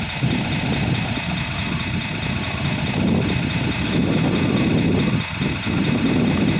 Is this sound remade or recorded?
recorded